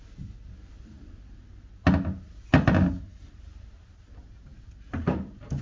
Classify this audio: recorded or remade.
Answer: recorded